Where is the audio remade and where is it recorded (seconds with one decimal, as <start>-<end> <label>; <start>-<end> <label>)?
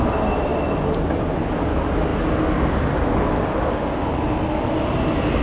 0.0-5.4 recorded